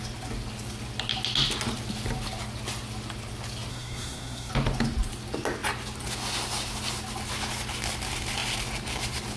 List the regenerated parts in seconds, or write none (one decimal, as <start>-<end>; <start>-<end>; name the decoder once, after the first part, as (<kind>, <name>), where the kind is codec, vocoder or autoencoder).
3.7-4.5 (codec, SNAC)